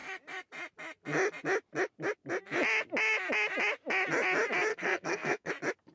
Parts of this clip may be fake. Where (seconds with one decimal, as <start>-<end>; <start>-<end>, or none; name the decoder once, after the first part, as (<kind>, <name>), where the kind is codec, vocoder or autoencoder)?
4.7-5.5 (codec, SNAC)